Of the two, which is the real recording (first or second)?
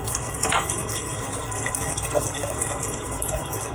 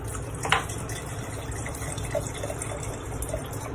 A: second